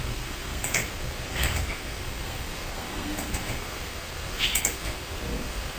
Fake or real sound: fake